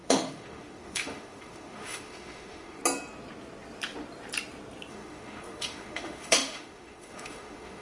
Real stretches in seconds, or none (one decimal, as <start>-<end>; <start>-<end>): 2.8-4.9